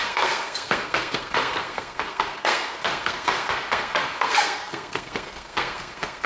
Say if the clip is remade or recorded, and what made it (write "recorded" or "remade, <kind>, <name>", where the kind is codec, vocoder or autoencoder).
remade, codec, SNAC